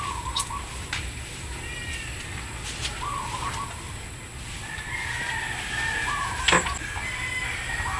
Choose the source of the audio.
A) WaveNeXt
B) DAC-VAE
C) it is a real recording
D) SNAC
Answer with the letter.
C